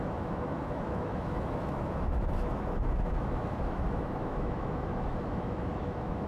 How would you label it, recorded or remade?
remade